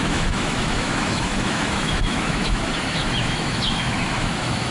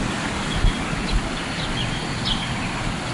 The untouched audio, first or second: second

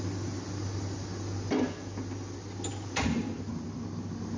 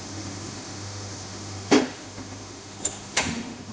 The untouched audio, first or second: first